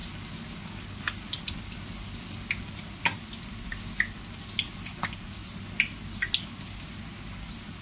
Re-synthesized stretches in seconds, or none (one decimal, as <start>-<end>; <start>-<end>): none